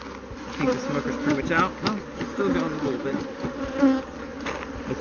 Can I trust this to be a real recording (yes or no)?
yes